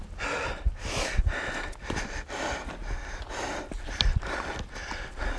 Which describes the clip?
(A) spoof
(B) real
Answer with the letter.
B